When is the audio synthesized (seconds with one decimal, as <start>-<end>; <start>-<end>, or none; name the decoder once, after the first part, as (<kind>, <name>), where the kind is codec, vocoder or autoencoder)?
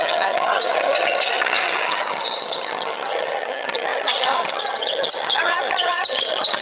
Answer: 0.0-6.6 (vocoder, HiFi-GAN)